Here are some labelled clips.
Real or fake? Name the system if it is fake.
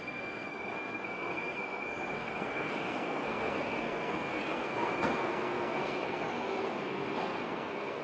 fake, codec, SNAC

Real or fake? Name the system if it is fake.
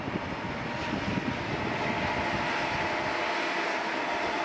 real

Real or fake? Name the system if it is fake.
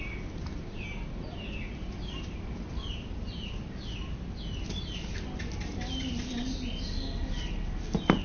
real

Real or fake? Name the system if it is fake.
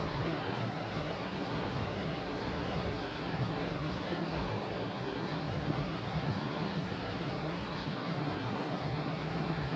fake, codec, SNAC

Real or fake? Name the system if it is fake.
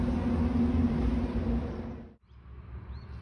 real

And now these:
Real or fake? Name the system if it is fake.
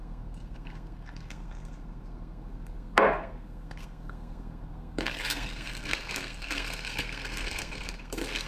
fake, codec, SNAC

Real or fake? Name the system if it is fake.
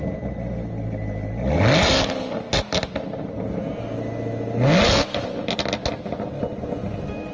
real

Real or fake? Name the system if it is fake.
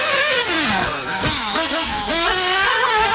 fake, codec, SNAC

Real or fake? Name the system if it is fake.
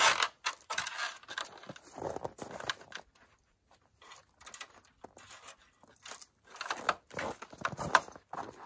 real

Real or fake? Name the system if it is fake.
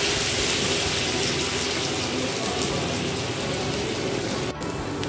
real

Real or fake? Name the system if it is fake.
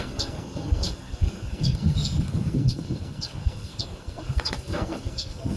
fake, codec, SNAC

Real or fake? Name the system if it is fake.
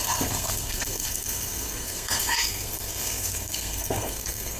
fake, codec, SNAC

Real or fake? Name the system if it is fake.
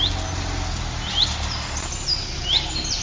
real